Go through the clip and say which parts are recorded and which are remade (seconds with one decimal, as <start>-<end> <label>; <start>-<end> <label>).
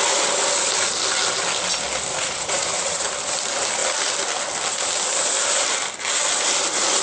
0.0-2.1 recorded; 2.1-3.1 remade; 3.1-7.0 recorded